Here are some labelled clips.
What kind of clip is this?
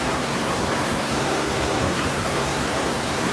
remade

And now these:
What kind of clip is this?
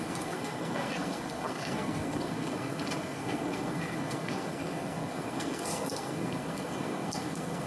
remade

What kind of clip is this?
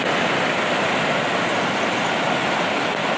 recorded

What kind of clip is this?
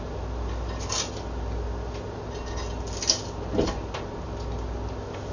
recorded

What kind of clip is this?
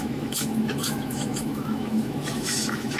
remade